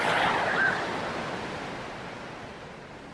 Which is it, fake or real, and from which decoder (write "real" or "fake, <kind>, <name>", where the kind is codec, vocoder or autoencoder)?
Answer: real